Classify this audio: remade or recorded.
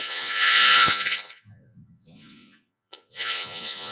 remade